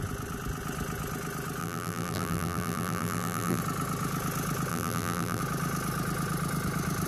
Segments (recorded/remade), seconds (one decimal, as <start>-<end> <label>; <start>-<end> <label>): 0.0-1.6 recorded; 1.6-3.6 remade; 3.6-4.7 recorded; 4.7-5.4 remade; 5.4-7.1 recorded